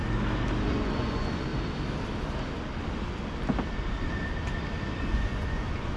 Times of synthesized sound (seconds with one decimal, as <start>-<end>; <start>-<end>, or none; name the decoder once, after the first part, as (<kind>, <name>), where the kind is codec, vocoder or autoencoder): 0.7-1.5 (vocoder, Vocos); 5.1-6.0